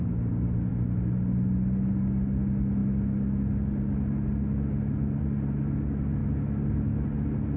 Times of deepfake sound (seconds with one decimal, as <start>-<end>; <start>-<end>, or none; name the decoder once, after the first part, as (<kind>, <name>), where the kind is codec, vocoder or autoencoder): none